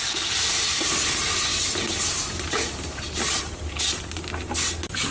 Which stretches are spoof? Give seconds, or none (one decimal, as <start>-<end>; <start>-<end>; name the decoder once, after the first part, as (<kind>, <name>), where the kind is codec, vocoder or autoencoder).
none